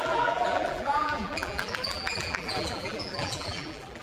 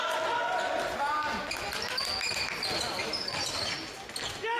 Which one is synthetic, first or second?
first